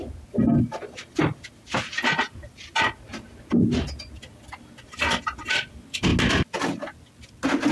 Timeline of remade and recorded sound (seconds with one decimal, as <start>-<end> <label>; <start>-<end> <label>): 0.0-7.7 recorded